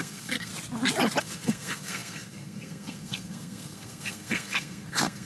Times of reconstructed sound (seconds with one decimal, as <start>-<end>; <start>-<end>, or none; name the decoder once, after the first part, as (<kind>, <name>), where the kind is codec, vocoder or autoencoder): 0.0-0.5 (codec, SNAC); 1.2-5.2